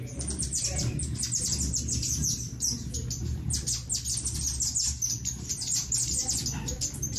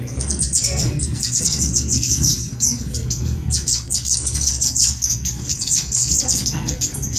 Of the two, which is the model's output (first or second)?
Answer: second